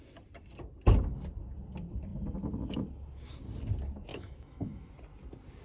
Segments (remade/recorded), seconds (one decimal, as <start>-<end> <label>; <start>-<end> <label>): 0.0-4.1 recorded; 4.1-4.9 remade; 4.9-5.6 recorded